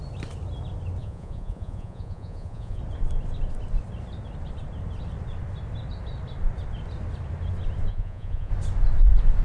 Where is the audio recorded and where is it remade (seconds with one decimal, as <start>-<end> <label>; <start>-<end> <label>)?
0.0-1.0 recorded; 1.0-2.8 remade; 2.8-7.9 recorded; 7.9-8.5 remade; 8.5-9.4 recorded